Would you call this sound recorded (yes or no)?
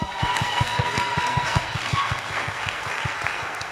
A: no